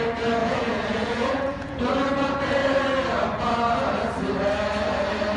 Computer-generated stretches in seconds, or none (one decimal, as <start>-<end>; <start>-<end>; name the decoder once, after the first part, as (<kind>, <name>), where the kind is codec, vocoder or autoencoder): 0.4-1.8 (vocoder, Vocos)